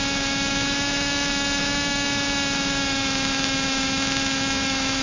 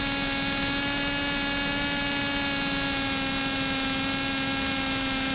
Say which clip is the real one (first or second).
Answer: second